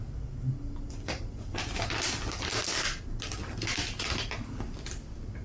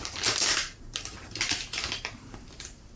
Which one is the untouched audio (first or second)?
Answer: first